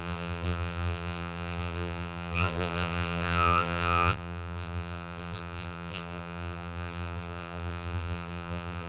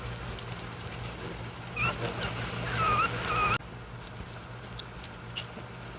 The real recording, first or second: second